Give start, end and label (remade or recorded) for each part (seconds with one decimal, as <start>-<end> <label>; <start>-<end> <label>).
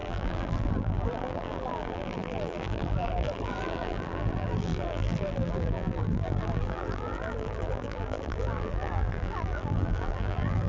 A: 0.0-10.7 remade